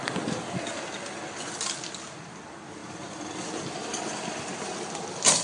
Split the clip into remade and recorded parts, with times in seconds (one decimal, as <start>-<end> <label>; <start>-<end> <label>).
0.0-5.4 recorded